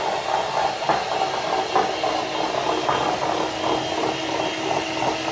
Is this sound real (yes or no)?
yes